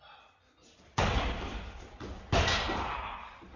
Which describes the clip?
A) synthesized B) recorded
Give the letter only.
B